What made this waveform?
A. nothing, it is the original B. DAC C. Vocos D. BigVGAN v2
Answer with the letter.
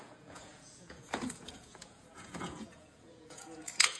C